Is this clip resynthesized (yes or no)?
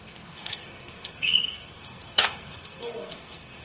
yes